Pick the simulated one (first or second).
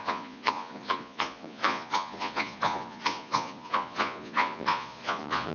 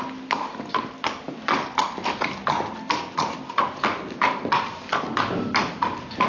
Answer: first